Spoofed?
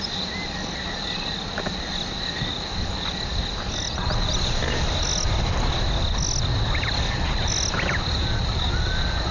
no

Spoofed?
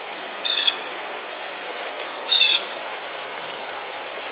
yes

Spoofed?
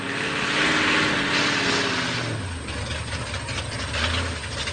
no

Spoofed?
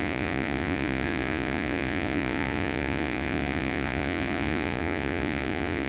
yes